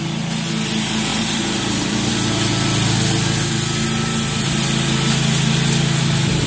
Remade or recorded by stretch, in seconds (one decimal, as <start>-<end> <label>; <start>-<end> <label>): 0.0-1.1 recorded; 1.1-2.1 remade; 2.1-6.5 recorded